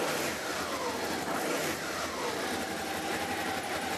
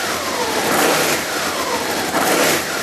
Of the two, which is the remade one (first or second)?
second